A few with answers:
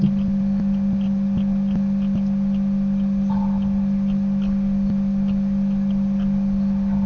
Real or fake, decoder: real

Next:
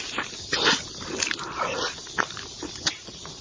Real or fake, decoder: real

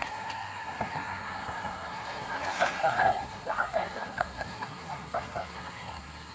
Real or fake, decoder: fake, codec, SNAC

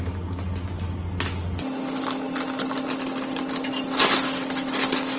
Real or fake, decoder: real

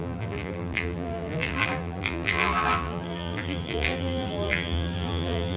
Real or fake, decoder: fake, vocoder, BigVGAN v2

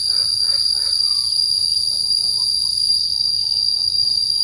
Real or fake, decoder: fake, vocoder, BigVGAN v2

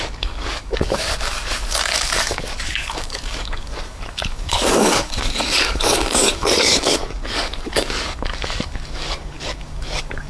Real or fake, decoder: fake, codec, DAC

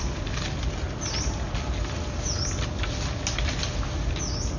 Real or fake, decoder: real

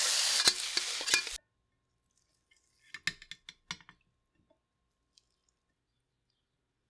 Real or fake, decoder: real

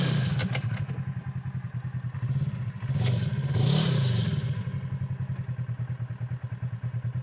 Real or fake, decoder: real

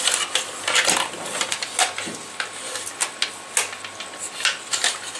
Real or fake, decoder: real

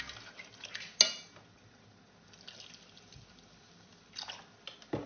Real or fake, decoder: real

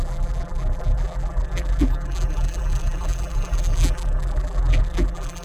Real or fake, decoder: fake, vocoder, BigVGAN v2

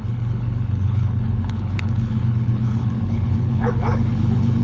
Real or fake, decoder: fake, codec, HILCodec